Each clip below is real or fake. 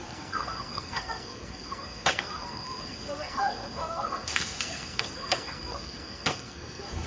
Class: fake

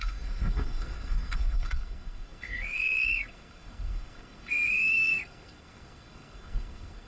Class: fake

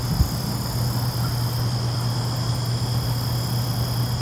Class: real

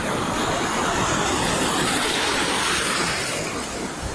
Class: real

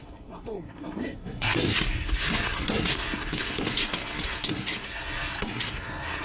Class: fake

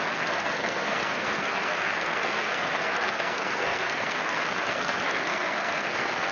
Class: fake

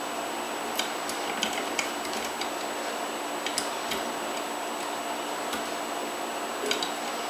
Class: real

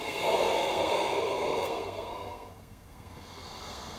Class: fake